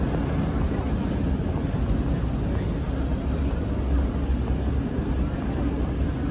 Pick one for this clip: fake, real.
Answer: real